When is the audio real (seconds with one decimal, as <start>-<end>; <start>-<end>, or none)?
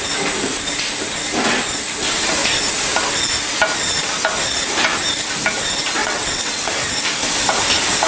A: 0.0-6.0; 6.7-8.1